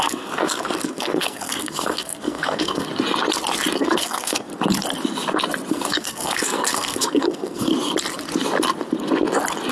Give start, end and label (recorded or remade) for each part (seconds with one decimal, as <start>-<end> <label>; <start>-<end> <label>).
0.0-2.9 remade; 2.9-3.8 recorded; 3.8-4.5 remade; 4.5-5.7 recorded; 5.7-7.7 remade; 7.7-9.7 recorded